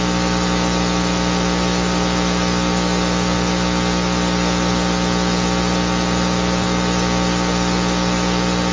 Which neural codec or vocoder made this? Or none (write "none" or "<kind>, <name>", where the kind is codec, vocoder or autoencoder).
none